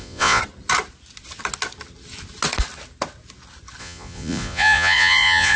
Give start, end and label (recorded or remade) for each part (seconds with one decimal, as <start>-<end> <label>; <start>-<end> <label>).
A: 0.0-0.4 remade; 0.4-3.8 recorded; 3.8-5.6 remade